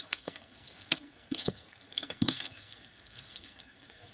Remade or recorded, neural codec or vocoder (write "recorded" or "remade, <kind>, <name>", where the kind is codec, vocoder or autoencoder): remade, codec, SNAC